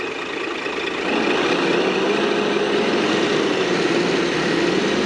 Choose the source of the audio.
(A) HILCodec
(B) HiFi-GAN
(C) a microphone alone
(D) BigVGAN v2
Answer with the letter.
C